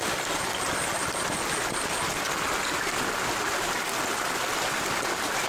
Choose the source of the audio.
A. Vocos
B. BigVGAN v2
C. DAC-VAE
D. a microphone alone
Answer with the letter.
D